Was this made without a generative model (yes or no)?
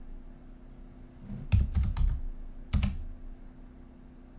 yes